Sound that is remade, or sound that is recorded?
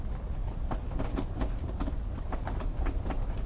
recorded